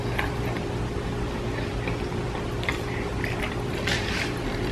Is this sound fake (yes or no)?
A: no